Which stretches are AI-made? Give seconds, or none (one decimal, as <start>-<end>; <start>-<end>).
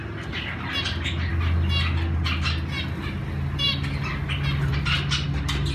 none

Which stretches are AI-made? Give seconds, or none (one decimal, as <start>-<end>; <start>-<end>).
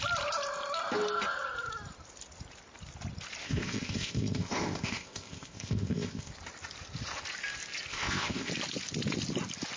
3.4-6.3; 7.9-8.5